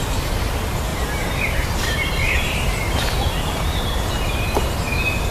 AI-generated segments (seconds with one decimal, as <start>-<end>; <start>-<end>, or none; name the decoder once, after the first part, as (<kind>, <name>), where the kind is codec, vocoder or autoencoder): 0.9-4.1 (vocoder, BigVGAN v2)